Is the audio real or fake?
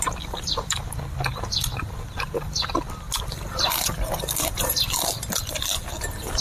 real